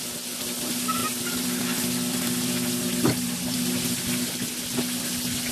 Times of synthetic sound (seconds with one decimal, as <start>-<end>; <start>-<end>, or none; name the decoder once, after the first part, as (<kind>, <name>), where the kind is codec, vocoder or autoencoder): none